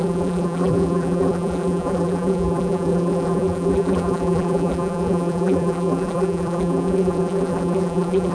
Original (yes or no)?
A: no